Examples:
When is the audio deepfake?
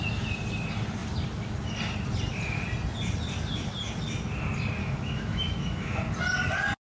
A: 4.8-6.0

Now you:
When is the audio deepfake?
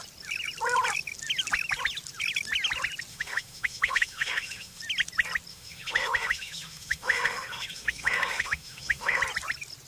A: 3.1-4.8; 5.5-9.2